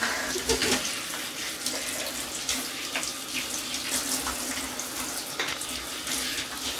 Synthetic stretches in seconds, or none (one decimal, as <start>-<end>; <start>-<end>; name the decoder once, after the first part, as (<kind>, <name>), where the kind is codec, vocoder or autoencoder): none